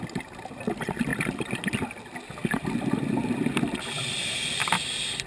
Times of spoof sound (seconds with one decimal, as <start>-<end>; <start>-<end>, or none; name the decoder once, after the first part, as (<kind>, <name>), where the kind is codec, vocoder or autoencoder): none